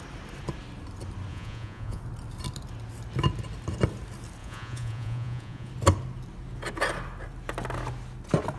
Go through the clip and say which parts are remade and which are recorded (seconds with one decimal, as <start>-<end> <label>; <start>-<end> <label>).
0.0-1.3 recorded; 1.3-2.0 remade; 2.0-4.4 recorded; 4.4-5.7 remade; 5.7-8.6 recorded